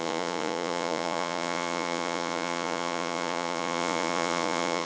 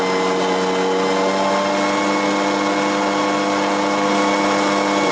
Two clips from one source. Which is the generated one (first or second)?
first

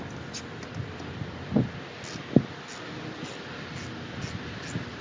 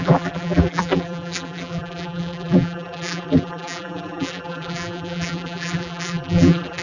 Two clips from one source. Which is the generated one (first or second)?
second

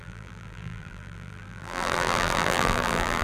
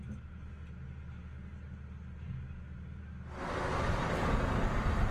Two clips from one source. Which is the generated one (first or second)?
first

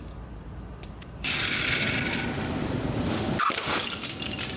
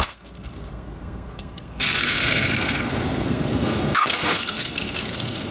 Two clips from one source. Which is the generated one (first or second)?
second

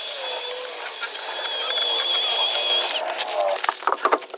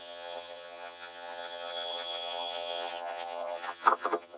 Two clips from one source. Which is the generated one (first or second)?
second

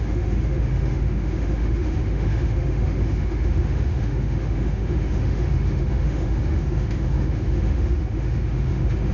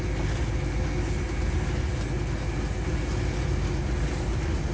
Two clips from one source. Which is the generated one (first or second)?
first